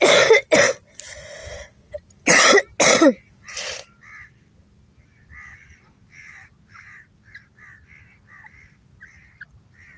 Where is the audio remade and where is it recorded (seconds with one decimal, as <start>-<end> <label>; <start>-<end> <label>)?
0.0-10.0 recorded